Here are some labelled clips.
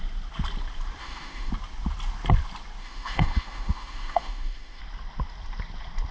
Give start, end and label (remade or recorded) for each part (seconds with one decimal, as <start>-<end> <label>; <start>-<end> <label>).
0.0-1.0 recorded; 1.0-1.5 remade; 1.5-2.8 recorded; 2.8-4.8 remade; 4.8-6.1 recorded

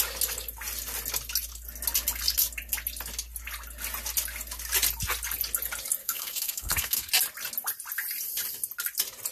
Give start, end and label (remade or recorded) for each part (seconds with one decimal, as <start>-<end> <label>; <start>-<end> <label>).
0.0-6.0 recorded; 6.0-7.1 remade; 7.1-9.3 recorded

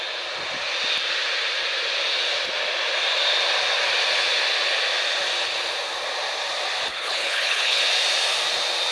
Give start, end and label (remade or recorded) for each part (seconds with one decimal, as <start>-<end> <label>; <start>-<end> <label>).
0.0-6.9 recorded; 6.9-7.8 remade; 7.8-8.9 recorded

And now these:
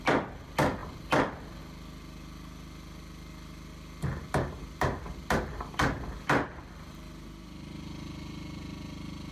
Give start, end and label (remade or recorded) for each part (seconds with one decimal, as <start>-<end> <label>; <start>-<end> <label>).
0.0-9.3 recorded